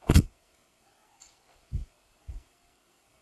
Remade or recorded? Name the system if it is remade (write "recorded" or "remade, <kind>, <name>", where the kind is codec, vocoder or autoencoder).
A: remade, codec, SNAC